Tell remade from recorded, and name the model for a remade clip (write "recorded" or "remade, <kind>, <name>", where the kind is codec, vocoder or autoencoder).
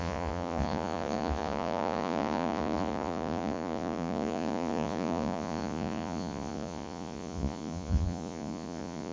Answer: remade, vocoder, Vocos